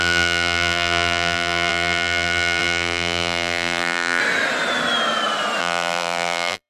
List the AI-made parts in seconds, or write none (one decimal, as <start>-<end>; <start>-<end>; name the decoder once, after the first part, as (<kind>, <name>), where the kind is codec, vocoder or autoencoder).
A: 0.0-4.2 (vocoder, BigVGAN v2); 5.6-6.7

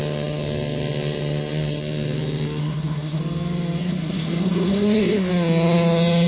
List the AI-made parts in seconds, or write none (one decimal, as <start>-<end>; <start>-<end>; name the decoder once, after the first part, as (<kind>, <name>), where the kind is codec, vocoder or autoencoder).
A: 2.6-3.2 (codec, SNAC); 3.8-5.3

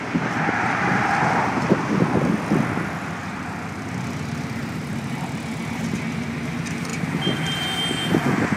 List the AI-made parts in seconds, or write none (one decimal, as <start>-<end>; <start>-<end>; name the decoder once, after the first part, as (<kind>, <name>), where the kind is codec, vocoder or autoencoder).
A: 3.2-3.9 (vocoder, BigVGAN v2); 4.6-5.4

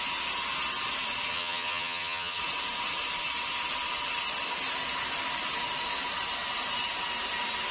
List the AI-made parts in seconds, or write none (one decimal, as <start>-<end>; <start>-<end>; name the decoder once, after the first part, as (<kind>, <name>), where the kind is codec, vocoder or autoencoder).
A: 1.3-2.4 (vocoder, HiFi-GAN)

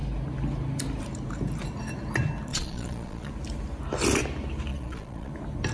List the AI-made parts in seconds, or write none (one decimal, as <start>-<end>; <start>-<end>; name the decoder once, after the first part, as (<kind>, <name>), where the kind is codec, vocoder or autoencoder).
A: 2.5-3.3 (vocoder, Vocos); 4.7-5.3

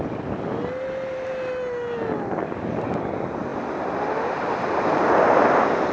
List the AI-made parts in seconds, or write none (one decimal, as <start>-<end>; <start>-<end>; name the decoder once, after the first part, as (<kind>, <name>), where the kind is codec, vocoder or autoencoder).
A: none

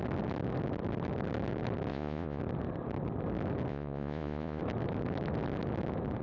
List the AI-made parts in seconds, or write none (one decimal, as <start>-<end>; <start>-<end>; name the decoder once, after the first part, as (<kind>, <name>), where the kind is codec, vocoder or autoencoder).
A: 1.9-2.4 (vocoder, Vocos); 3.7-4.6

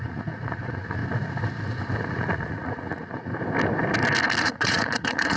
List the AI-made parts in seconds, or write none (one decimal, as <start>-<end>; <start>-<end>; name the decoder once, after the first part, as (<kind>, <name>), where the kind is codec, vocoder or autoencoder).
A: 0.0-1.0 (vocoder, Vocos); 2.1-3.3; 4.4-5.4